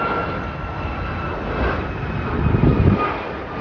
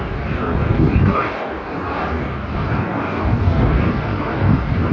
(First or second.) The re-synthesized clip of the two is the second